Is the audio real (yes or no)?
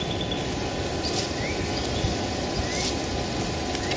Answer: yes